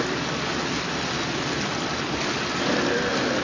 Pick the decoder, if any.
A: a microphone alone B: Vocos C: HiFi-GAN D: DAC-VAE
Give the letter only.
A